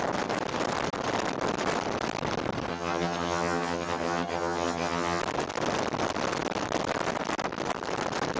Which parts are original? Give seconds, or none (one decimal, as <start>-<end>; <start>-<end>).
0.0-2.7; 5.2-8.4

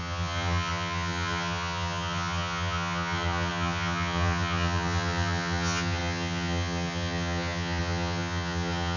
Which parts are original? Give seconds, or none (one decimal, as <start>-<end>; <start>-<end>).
none

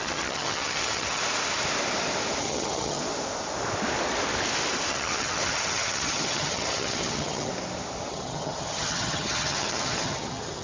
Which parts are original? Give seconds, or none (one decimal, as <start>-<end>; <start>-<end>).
1.2-2.4; 3.0-4.9; 7.5-8.1